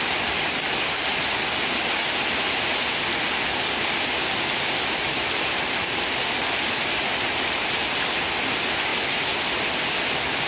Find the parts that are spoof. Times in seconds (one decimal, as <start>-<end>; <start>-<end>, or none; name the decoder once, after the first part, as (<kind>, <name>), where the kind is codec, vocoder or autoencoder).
none